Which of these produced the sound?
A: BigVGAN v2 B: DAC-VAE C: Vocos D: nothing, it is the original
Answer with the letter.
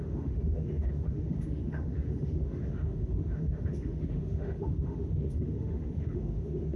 B